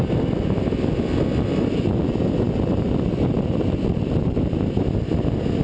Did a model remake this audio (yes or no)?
no